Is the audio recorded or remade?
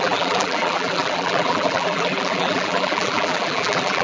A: remade